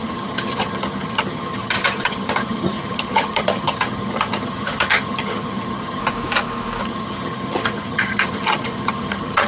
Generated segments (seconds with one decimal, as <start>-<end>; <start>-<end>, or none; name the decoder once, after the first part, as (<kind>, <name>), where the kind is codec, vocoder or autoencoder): 0.0-6.0 (vocoder, HiFi-GAN); 6.8-9.5